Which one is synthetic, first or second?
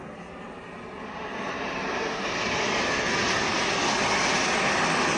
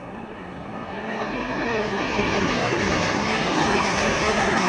second